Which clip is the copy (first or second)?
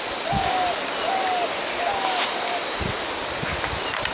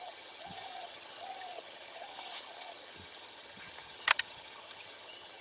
second